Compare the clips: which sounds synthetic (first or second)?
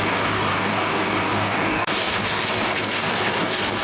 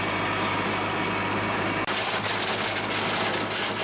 first